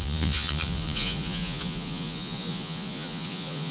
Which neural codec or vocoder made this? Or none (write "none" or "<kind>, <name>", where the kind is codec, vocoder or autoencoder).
vocoder, Vocos